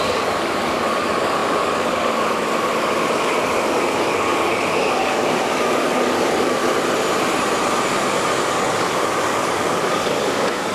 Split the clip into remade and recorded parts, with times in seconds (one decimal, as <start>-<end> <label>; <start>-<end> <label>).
0.0-6.6 remade; 6.6-8.5 recorded; 8.5-10.7 remade